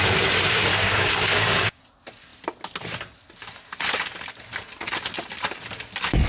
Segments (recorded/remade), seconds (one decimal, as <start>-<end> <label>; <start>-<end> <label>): 0.0-0.7 recorded; 0.7-1.8 remade; 1.8-6.3 recorded